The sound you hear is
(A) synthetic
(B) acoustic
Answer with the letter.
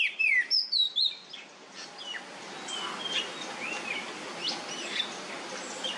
B